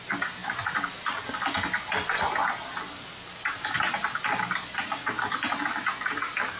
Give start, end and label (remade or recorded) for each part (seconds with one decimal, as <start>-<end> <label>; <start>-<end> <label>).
0.0-6.6 recorded